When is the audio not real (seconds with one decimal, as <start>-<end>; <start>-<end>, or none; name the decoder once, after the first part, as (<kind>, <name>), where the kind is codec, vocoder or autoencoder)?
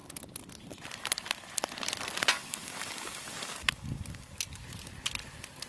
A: 2.3-4.6 (codec, DAC)